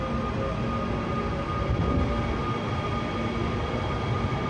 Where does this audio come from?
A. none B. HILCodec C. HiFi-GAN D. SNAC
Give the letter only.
A